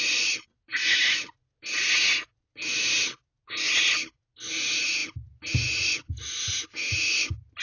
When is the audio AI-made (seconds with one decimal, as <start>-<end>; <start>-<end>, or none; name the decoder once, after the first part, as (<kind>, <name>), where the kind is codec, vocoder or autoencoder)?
none